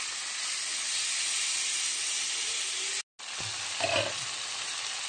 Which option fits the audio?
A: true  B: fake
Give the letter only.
A